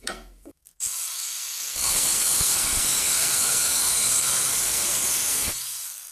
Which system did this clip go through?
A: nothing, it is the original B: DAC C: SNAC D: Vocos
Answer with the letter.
C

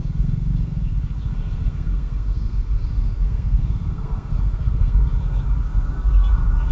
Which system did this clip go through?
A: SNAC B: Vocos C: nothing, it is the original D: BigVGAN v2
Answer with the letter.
A